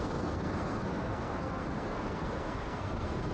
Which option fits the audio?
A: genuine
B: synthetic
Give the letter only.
B